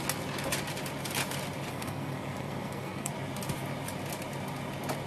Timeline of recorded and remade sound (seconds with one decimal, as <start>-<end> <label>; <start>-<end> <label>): 0.0-1.7 recorded; 1.7-3.1 remade; 3.1-5.1 recorded